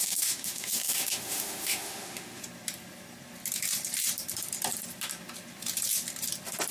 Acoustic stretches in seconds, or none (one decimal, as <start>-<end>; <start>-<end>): 2.4-6.7